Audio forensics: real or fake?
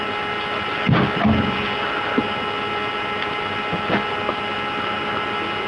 real